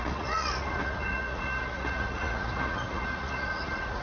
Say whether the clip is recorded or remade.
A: remade